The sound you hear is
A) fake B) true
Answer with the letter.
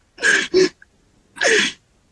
B